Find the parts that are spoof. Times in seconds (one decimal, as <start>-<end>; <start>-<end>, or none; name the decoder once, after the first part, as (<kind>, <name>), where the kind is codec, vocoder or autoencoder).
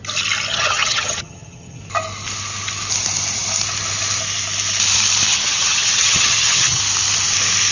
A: 0.5-1.8 (vocoder, HiFi-GAN); 5.3-6.8